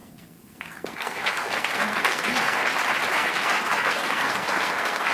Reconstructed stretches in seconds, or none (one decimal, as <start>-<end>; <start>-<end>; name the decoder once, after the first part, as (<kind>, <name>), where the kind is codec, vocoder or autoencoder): 0.0-2.6 (codec, SNAC); 3.1-5.1